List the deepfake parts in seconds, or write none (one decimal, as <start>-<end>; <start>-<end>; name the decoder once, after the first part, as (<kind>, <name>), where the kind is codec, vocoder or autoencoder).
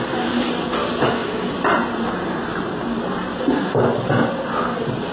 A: none